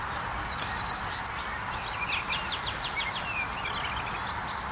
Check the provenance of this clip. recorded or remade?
recorded